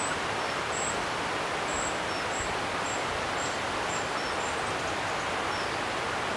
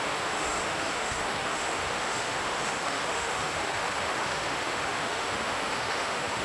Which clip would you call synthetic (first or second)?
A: second